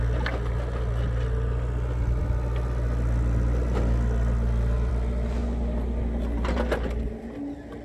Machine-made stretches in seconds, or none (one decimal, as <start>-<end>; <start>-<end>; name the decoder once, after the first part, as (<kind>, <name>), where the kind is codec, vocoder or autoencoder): none